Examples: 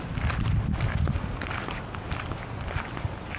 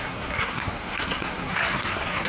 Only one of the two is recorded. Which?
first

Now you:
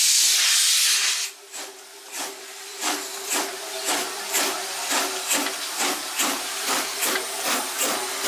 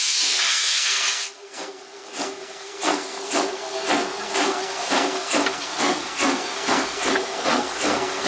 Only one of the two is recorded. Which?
first